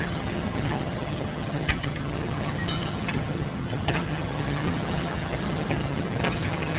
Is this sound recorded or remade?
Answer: remade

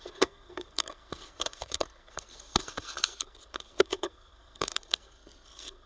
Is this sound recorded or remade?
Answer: remade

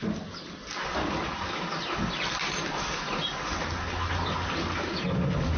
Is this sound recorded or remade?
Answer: recorded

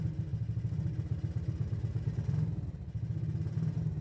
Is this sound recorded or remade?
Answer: recorded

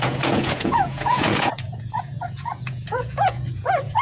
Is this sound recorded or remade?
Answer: remade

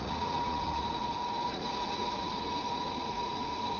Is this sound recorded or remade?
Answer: remade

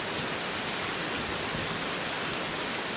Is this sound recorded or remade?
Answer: recorded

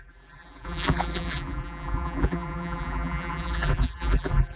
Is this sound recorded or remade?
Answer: remade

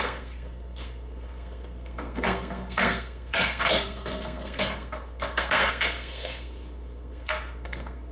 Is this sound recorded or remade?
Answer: remade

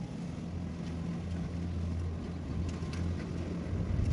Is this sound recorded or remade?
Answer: recorded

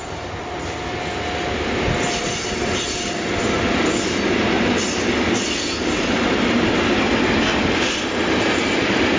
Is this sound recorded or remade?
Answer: recorded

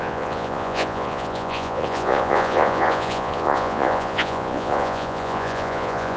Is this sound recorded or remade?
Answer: remade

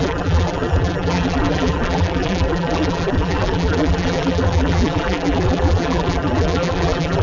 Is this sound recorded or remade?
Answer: remade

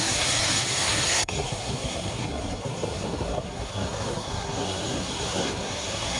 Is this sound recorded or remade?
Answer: remade